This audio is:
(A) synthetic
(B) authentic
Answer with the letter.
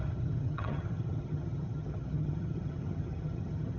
A